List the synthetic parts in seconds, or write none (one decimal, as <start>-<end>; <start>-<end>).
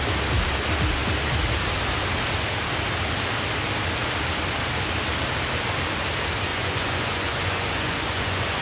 6.5-8.6